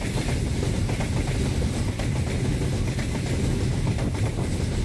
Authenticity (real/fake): real